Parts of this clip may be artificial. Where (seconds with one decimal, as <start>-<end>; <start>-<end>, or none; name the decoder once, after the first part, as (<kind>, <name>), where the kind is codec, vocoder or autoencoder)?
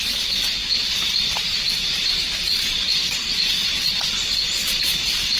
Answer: 0.6-3.8 (vocoder, BigVGAN v2)